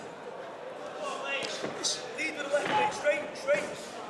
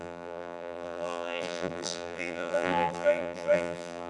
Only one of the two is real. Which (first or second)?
first